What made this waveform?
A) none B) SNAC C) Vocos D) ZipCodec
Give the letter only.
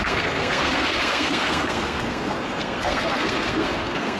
B